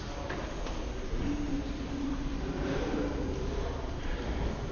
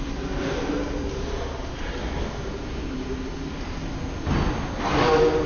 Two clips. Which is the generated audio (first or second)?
first